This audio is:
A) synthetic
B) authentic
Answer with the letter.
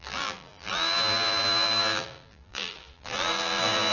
A